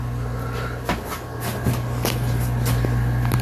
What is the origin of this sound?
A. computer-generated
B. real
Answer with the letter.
B